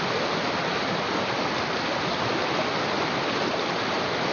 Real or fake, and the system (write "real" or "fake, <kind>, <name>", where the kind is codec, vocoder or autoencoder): real